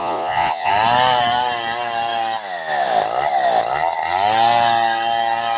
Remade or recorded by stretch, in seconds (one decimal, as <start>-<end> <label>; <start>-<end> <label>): 0.0-0.7 remade; 0.7-5.6 recorded